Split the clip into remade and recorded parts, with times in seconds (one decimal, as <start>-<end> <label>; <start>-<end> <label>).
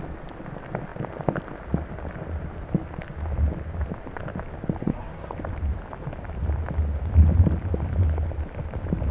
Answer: 0.0-4.8 recorded; 4.8-5.3 remade; 5.3-9.1 recorded